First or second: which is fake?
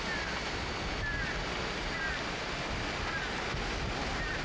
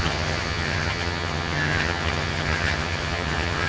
second